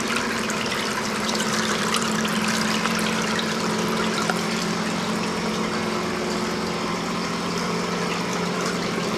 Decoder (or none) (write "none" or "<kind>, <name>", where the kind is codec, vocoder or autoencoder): vocoder, BigVGAN v2